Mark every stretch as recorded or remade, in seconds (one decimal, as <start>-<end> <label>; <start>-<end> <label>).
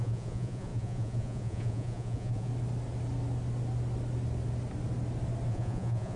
0.0-2.5 remade; 2.5-5.5 recorded; 5.5-6.2 remade